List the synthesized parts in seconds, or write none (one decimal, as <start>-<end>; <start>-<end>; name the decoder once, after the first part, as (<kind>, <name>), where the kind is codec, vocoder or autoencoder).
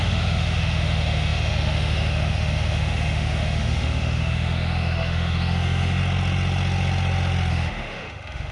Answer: 0.0-6.0 (autoencoder, DAC-VAE); 7.5-8.5